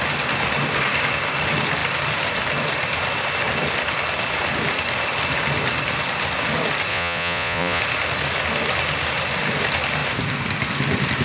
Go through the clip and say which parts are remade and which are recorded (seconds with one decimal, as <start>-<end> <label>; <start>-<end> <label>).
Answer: 0.0-6.9 recorded; 6.9-7.8 remade; 7.8-11.2 recorded